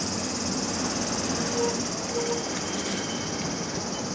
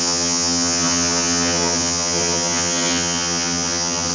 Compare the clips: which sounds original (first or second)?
first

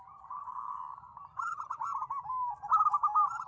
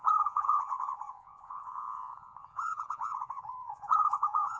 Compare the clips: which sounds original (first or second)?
first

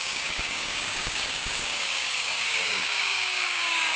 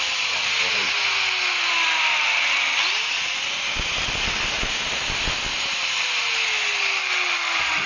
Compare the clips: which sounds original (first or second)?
second